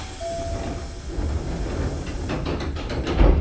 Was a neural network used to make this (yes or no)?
no